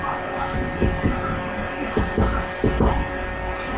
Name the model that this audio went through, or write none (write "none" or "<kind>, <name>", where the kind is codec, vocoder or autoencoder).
codec, DAC